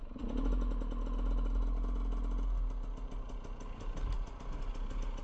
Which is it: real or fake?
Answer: real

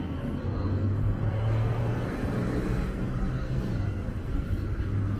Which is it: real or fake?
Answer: fake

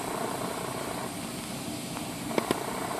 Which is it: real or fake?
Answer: real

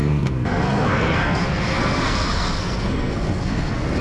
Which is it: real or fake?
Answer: fake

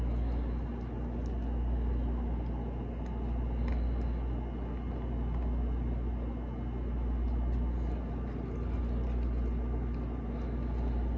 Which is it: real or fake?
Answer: real